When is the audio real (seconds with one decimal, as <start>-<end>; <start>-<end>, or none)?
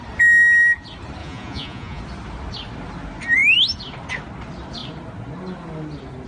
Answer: 0.0-1.2; 2.0-6.3